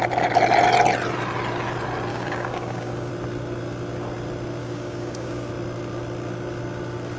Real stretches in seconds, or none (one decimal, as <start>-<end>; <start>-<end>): 0.0-2.1; 3.1-4.6; 5.5-7.2